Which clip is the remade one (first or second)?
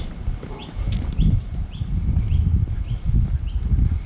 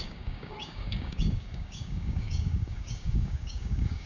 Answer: second